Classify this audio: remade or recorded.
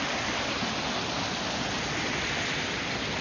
recorded